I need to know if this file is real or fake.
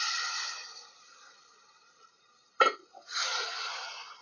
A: real